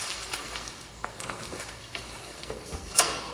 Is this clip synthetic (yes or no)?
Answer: yes